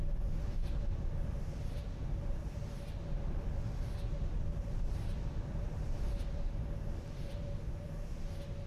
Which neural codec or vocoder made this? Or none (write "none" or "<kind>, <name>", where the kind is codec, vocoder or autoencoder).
vocoder, BigVGAN v2